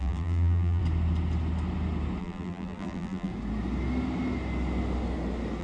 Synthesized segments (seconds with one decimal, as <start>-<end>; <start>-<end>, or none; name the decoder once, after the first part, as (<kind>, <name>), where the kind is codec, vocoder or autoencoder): 0.0-0.8 (vocoder, BigVGAN v2); 2.2-3.3